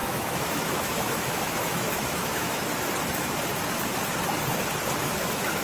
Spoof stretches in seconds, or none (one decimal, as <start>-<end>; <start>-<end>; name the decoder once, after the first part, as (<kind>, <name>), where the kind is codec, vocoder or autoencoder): 0.0-2.7 (autoencoder, DAC-VAE); 5.0-5.6